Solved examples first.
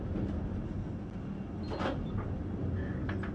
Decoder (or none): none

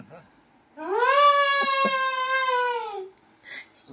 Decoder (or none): none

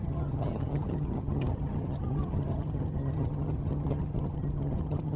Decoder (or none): vocoder, HiFi-GAN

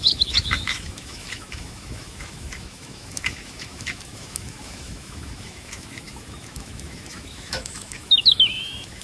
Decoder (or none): autoencoder, DAC-VAE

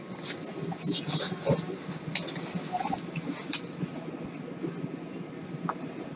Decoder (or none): none